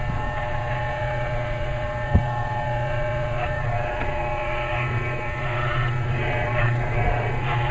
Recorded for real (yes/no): no